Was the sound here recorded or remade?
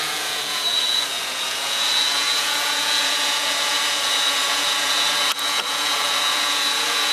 remade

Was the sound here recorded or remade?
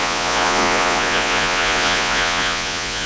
remade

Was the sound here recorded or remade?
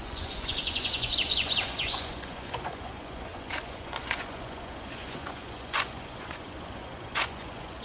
remade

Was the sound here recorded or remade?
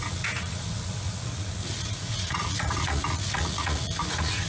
remade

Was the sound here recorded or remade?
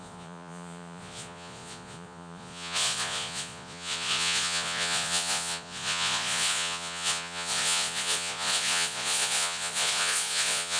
remade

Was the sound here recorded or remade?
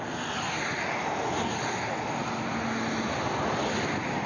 recorded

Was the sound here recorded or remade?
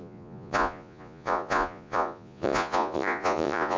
remade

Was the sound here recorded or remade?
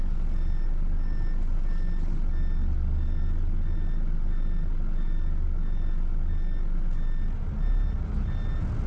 recorded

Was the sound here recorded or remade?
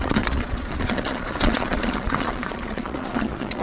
remade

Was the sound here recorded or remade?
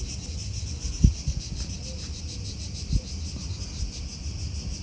recorded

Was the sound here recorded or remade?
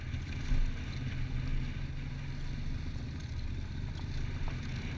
recorded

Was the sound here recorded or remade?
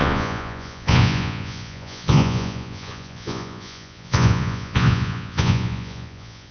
remade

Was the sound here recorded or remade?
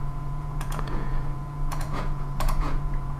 remade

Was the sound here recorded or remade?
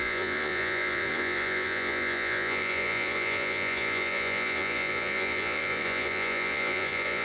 remade